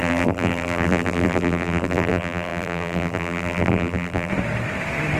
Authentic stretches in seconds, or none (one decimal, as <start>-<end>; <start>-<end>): 4.3-5.2